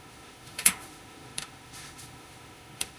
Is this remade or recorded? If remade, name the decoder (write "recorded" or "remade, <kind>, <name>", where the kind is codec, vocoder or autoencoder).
remade, autoencoder, DAC-VAE